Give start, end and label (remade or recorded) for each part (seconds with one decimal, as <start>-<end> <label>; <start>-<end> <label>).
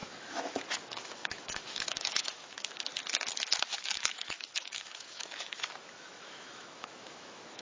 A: 0.0-2.9 remade; 2.9-3.8 recorded; 3.8-7.6 remade